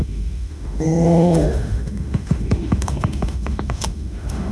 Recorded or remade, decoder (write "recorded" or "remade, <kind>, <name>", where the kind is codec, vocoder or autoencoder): remade, autoencoder, DAC-VAE